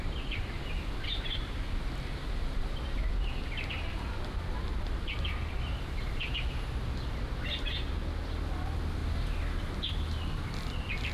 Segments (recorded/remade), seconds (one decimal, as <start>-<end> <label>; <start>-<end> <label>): 0.0-11.1 recorded